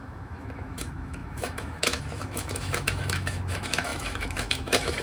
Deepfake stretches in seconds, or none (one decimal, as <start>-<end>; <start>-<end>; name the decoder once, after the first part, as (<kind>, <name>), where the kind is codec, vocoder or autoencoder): 0.0-5.0 (autoencoder, DAC-VAE)